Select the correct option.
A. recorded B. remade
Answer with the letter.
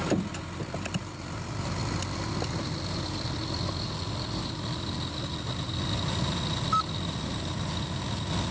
A